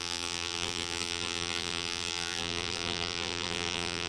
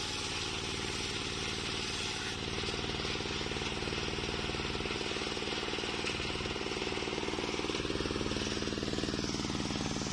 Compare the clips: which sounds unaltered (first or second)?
second